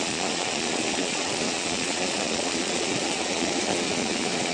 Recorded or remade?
remade